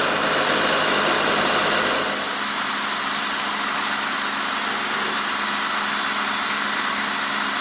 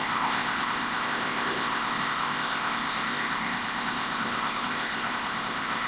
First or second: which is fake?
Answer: second